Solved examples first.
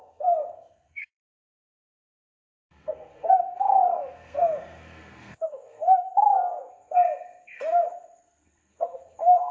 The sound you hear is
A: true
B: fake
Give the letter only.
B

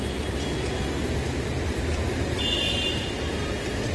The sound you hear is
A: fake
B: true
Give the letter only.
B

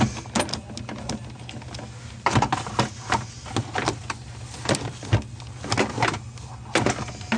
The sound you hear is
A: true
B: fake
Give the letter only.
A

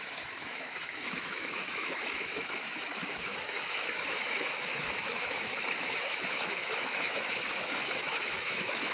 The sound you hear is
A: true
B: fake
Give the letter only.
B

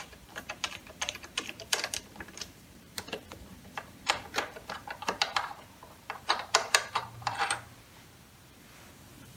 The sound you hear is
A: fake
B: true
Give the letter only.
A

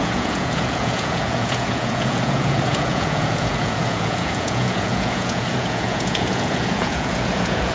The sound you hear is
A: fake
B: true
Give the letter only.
A